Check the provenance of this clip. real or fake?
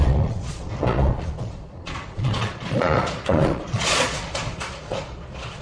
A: fake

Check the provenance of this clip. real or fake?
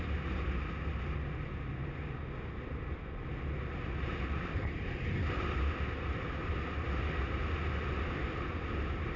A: real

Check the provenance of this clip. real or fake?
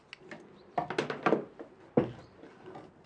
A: real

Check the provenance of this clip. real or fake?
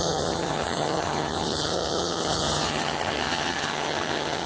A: fake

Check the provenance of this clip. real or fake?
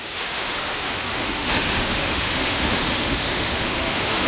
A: fake